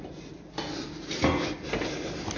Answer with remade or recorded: recorded